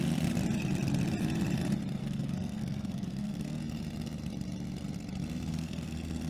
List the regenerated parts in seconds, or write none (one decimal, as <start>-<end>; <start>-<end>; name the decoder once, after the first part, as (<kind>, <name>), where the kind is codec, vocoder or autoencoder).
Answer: 2.0-3.6 (codec, SNAC); 5.5-6.3